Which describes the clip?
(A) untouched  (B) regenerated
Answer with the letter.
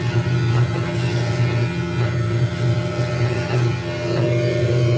B